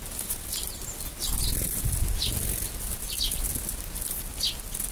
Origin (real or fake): real